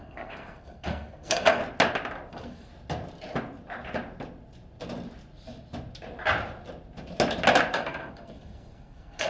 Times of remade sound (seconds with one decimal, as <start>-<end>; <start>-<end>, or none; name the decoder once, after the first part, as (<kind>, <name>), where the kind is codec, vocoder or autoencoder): 0.0-1.6 (codec, SNAC); 2.3-2.7; 7.7-9.3